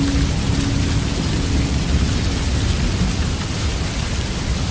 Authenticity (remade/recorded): recorded